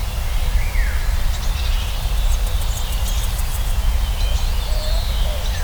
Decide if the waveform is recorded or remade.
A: recorded